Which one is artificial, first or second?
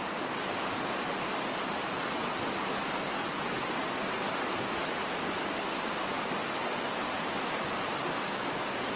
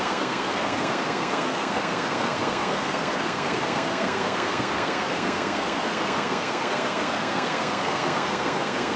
second